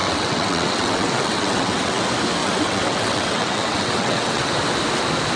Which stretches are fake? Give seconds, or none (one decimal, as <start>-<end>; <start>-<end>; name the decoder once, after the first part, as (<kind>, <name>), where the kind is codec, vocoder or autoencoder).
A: 0.0-2.0 (vocoder, WaveNeXt); 2.4-4.5